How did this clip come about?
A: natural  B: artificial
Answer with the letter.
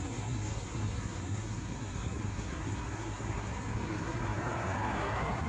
B